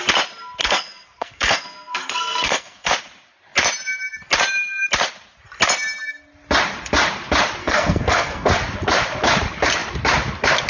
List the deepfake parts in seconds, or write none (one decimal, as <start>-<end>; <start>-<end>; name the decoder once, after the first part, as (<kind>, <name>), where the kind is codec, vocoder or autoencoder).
0.6-2.9 (codec, SNAC); 7.6-8.5